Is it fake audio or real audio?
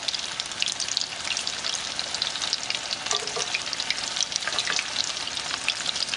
real